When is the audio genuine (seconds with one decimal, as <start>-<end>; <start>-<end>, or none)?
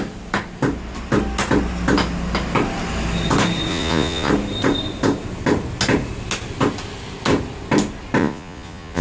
0.0-3.7; 4.3-8.2